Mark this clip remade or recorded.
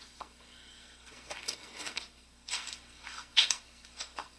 remade